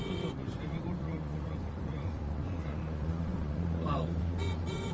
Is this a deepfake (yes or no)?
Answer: yes